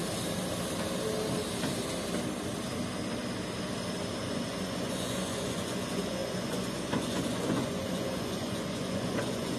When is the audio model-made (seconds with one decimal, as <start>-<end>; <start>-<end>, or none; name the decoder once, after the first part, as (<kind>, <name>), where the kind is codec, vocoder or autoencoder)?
4.2-9.6 (vocoder, Vocos)